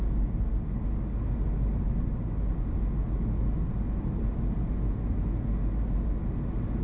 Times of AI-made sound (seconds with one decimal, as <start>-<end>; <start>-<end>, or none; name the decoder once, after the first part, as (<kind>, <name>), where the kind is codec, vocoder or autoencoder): none